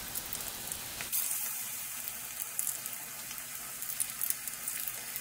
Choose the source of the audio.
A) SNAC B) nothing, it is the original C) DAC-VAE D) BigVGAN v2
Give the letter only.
B